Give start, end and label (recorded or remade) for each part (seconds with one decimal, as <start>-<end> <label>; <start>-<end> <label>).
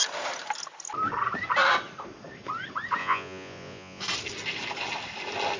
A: 0.0-3.0 recorded; 3.0-4.0 remade; 4.0-5.6 recorded